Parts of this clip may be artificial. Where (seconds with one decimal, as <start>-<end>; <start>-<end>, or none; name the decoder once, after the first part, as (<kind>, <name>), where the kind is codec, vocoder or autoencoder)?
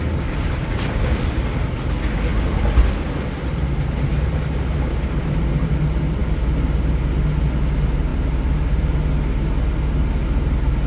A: none